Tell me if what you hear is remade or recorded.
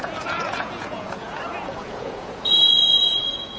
remade